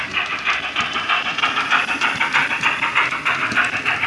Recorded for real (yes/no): yes